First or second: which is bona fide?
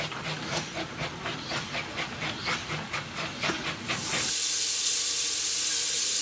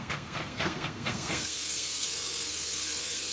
first